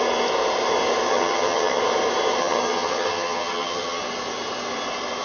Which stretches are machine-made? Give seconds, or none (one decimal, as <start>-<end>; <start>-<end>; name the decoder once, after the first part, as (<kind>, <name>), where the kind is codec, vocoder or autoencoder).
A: 1.1-1.8 (vocoder, HiFi-GAN); 2.4-4.0